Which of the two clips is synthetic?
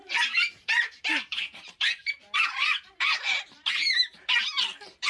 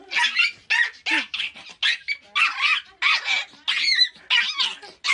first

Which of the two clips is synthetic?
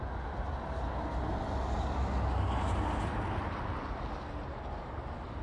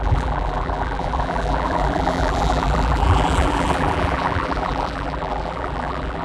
second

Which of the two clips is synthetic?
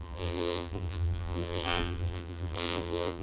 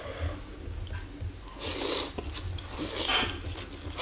first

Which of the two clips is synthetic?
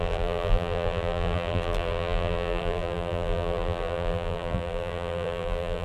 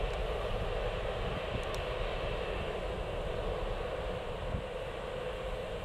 first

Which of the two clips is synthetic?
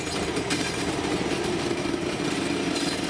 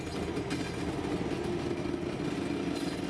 first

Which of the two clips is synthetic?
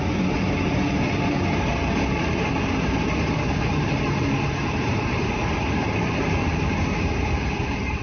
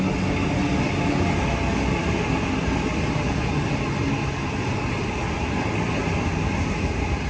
first